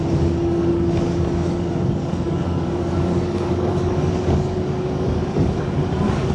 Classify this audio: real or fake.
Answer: fake